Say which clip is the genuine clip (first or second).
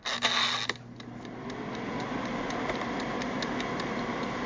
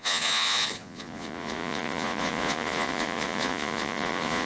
first